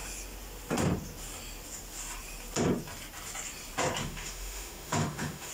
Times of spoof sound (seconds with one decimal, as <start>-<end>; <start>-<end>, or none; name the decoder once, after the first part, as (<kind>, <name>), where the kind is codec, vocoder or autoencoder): 4.0-5.5 (autoencoder, DAC-VAE)